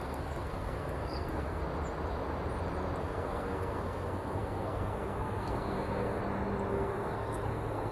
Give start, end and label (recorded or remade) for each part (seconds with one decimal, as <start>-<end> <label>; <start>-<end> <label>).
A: 0.0-1.6 remade; 1.6-3.0 recorded; 3.0-6.2 remade; 6.2-6.7 recorded; 6.7-7.9 remade